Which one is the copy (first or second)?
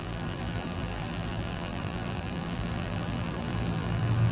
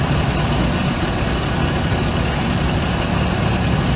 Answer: first